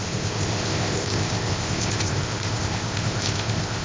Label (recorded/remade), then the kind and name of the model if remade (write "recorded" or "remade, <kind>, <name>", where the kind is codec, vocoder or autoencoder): remade, codec, ZipCodec